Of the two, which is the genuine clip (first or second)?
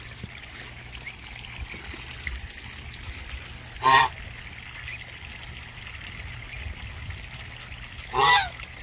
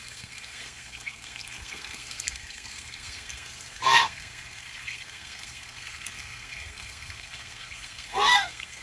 first